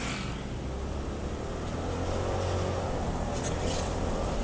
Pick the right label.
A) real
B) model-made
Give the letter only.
A